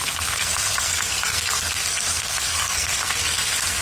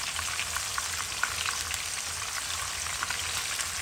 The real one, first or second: second